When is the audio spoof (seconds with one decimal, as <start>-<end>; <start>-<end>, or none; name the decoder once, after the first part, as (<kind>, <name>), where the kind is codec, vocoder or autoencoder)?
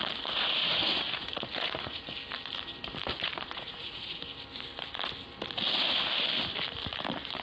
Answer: 0.6-2.1 (vocoder, Vocos); 3.1-4.2